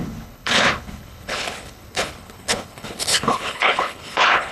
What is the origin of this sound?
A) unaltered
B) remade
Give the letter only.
B